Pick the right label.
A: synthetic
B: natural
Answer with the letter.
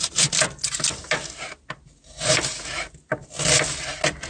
B